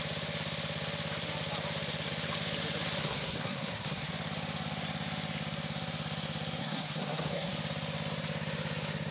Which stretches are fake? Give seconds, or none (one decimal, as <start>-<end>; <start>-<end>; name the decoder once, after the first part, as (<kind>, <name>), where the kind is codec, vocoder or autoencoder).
3.0-4.1 (codec, SNAC); 6.6-7.5